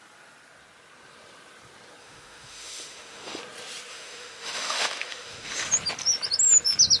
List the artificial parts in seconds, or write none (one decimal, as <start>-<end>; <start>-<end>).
2.0-3.4; 3.9-5.7